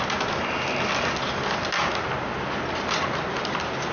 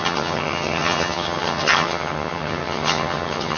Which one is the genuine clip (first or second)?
first